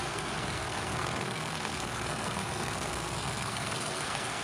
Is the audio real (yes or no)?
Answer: no